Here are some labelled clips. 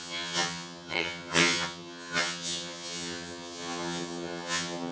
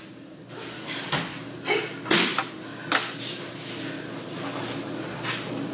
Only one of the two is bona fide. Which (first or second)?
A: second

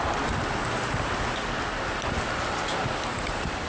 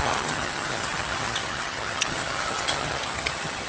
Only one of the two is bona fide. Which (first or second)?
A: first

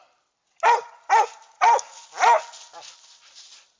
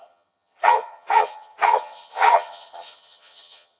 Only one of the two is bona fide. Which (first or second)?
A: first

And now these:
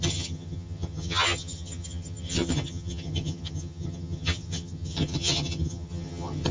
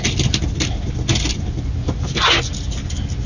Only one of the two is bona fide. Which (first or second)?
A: second